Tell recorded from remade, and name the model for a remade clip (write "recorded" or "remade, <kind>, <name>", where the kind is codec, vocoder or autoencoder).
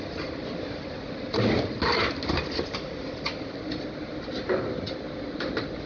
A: recorded